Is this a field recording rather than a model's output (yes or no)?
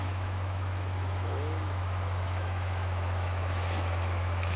no